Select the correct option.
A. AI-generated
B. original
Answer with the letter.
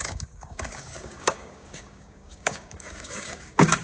A